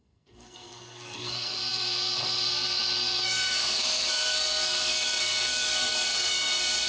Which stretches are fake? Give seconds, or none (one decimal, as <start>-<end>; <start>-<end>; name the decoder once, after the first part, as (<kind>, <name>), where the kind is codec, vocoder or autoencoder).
0.0-6.9 (codec, SNAC)